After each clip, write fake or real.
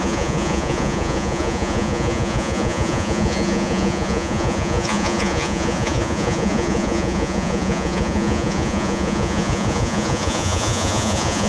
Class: fake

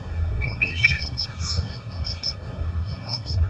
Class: fake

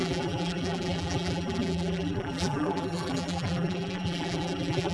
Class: fake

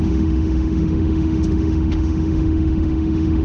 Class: fake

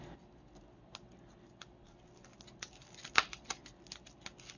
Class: real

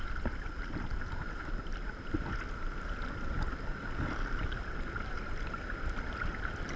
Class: real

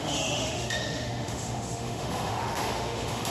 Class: fake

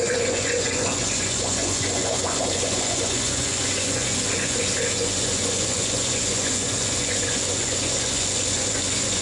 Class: fake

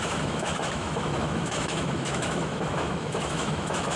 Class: fake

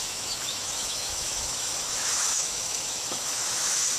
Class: fake